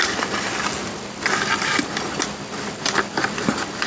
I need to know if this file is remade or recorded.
recorded